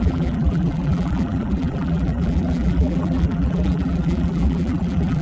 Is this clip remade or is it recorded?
remade